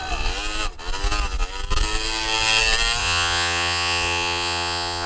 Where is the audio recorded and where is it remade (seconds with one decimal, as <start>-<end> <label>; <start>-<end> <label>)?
0.0-3.0 recorded; 3.0-5.1 remade